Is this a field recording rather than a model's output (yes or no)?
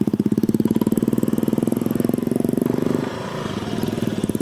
yes